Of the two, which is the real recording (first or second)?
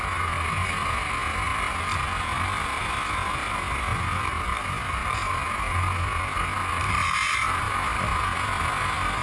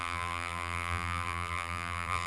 first